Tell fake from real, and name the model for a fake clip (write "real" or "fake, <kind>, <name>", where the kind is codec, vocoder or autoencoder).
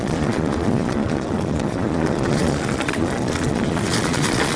fake, vocoder, Vocos